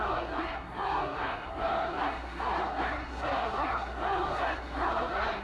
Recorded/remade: remade